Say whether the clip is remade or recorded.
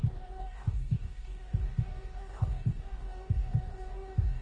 remade